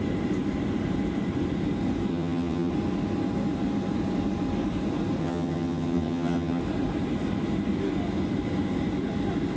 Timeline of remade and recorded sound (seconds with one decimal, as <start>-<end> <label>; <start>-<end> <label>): 0.0-2.1 recorded; 2.1-2.7 remade; 2.7-5.2 recorded; 5.2-6.6 remade; 6.6-9.6 recorded